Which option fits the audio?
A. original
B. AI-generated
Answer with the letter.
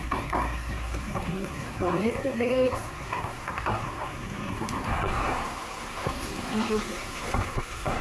B